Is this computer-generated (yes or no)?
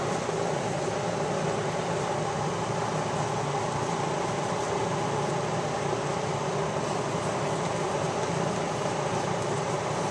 no